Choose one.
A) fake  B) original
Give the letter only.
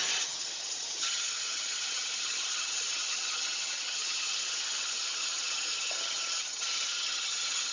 A